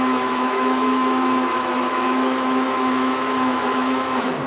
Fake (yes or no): yes